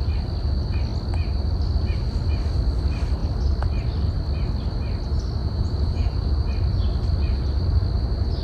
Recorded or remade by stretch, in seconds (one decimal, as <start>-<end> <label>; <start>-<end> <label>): 0.0-5.4 recorded; 5.4-6.3 remade; 6.3-8.4 recorded